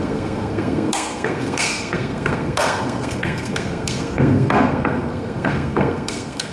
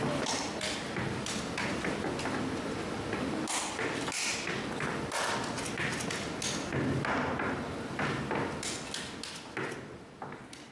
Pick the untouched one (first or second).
second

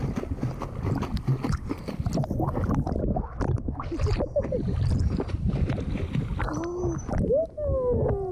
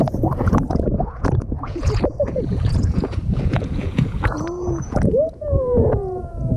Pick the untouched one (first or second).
first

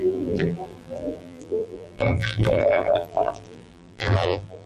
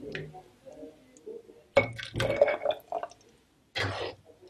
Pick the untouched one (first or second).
second